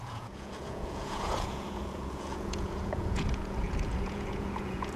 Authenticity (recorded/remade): remade